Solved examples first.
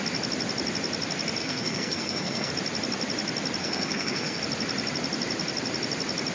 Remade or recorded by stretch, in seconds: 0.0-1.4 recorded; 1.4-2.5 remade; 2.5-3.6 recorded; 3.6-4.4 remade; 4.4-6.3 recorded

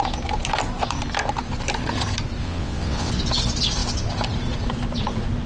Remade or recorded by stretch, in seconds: 0.0-2.4 recorded; 2.4-3.1 remade; 3.1-5.5 recorded

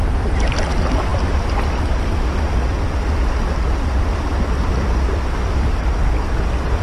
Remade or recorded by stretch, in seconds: 0.0-6.8 recorded

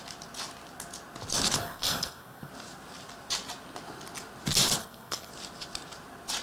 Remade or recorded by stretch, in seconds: 0.0-1.6 recorded; 1.6-2.5 remade; 2.5-4.8 recorded; 4.8-5.3 remade; 5.3-6.4 recorded

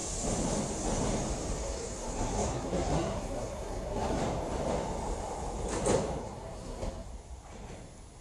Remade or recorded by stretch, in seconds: 0.0-1.6 recorded; 1.6-4.2 remade; 4.2-6.2 recorded; 6.2-7.1 remade; 7.1-8.2 recorded

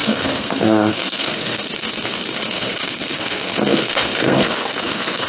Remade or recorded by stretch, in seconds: 0.0-5.3 remade

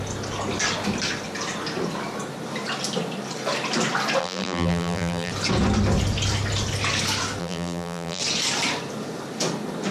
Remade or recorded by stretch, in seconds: 0.0-4.2 recorded; 4.2-5.3 remade; 5.3-7.4 recorded; 7.4-8.2 remade; 8.2-9.9 recorded